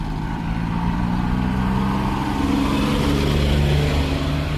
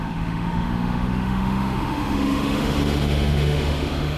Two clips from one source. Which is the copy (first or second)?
second